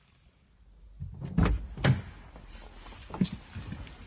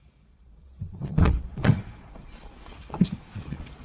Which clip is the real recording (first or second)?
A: first